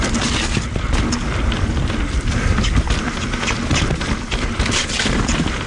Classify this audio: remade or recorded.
recorded